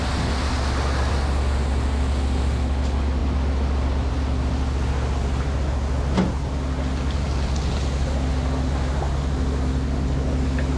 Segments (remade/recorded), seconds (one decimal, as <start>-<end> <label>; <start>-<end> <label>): 0.0-10.8 recorded